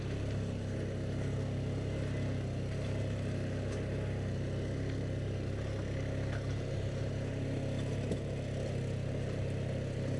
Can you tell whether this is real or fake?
real